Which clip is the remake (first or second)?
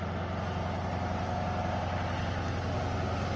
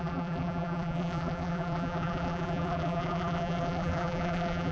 second